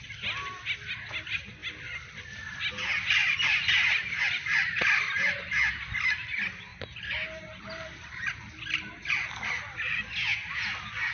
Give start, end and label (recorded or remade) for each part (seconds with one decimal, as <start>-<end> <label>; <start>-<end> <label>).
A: 0.0-11.1 recorded